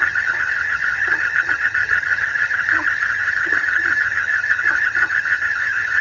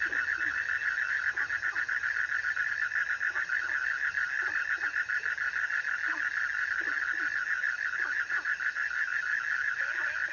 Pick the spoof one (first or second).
first